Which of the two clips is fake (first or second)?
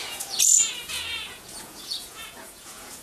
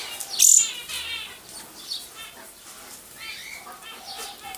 first